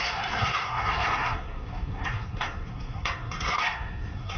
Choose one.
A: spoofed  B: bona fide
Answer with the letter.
A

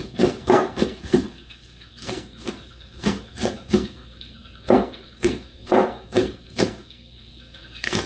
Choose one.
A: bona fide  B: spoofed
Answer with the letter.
B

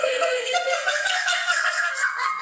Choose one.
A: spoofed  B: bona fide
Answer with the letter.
A